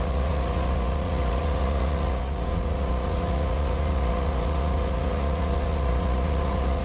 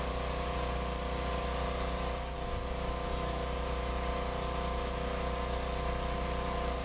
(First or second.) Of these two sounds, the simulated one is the first